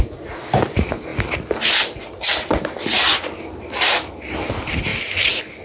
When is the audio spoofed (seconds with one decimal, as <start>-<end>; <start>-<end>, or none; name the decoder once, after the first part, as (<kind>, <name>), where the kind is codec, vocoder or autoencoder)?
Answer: none